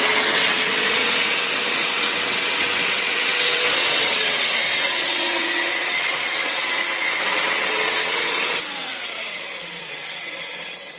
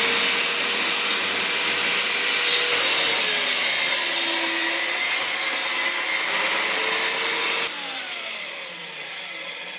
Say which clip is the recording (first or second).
second